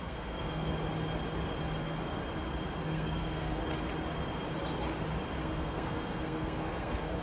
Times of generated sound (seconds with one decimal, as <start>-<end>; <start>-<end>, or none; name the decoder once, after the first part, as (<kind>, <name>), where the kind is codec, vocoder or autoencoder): 0.0-0.7 (codec, SNAC); 1.8-2.2; 2.8-3.6; 5.4-7.2